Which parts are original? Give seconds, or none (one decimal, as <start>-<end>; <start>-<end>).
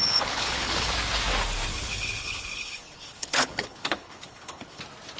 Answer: 0.9-1.7; 4.8-5.2